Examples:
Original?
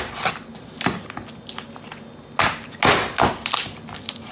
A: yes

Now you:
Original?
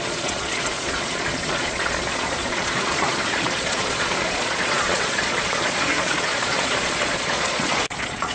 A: no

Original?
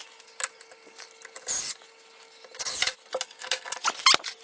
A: yes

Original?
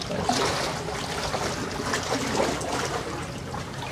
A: yes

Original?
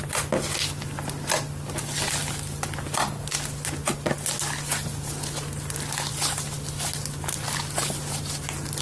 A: yes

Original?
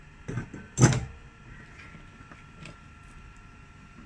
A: yes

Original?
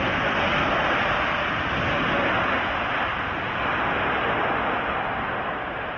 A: yes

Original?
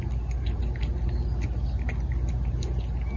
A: yes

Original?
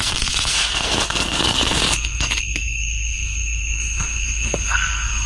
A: no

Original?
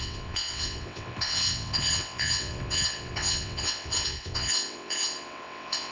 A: no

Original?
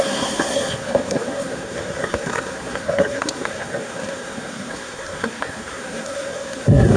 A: no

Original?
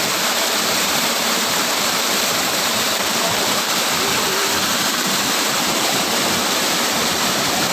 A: no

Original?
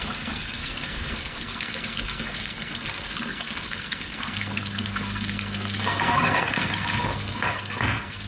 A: no